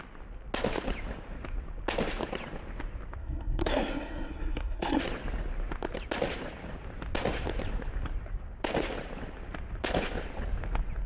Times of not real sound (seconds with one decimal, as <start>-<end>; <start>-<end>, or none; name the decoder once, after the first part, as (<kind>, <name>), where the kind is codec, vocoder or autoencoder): 3.2-5.0 (codec, SNAC)